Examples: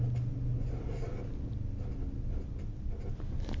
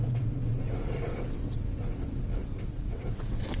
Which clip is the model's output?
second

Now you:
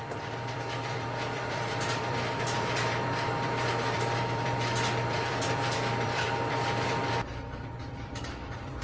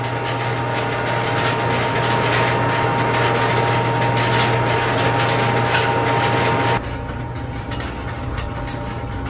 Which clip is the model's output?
first